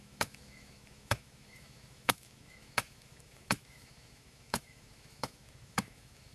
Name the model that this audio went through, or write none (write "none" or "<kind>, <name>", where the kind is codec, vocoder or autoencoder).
autoencoder, DAC-VAE